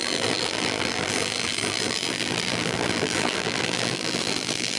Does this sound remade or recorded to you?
remade